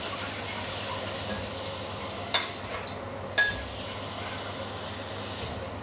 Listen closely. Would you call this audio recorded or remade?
recorded